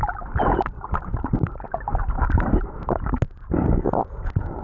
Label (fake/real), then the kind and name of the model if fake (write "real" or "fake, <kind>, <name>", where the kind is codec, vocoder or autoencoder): real